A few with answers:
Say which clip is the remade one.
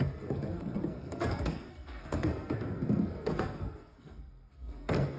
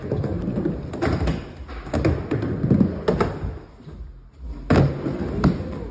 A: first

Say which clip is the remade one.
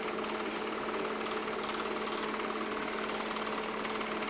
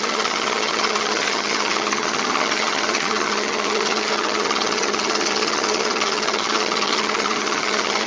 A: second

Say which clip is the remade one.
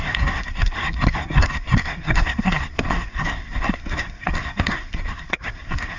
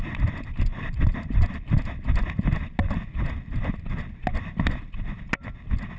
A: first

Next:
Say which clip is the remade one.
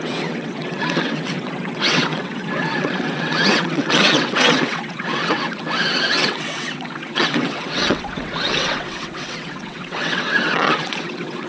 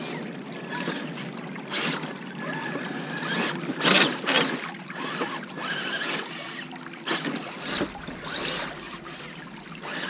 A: first